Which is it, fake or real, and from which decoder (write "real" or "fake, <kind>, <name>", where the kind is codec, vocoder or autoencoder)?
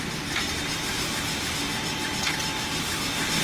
real